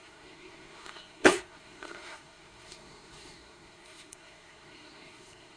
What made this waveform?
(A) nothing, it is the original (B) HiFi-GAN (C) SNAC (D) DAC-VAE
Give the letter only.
C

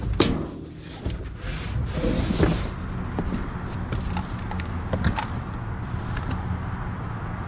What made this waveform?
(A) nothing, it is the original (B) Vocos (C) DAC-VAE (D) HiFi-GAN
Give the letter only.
A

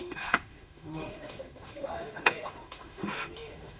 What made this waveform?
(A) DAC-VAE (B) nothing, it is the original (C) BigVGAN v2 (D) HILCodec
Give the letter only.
A